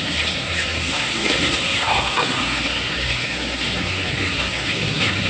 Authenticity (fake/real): fake